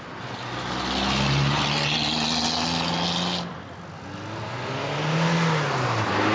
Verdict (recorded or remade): recorded